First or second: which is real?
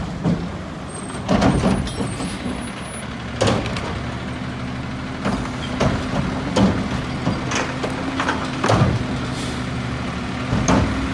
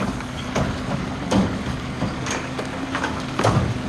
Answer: first